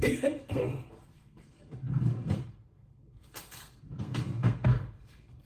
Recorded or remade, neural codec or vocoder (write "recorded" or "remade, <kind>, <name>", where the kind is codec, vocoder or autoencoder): remade, codec, SNAC